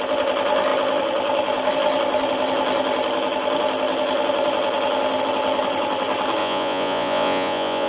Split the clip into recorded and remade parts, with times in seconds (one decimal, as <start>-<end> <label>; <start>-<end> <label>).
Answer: 0.0-6.4 recorded; 6.4-7.9 remade

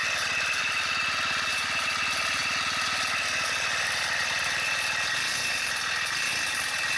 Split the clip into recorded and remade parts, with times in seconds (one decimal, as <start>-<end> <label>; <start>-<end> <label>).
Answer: 0.0-7.0 recorded